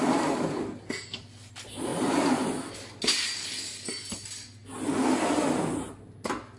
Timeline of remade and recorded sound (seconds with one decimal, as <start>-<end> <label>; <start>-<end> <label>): 0.0-6.6 recorded